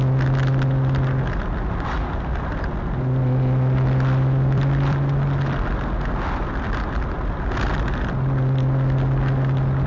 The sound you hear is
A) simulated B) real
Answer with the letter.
B